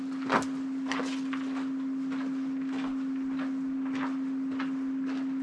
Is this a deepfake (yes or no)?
no